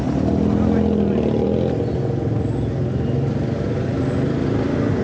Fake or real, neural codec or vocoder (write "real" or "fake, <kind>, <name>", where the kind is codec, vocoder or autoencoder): real